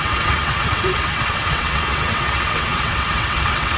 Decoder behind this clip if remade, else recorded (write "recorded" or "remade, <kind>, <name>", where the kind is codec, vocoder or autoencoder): remade, vocoder, WaveNeXt